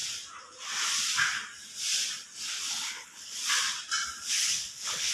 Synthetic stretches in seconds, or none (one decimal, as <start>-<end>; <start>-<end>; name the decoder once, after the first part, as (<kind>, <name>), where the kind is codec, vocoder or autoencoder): 2.7-3.4 (codec, HILCodec); 4.3-5.1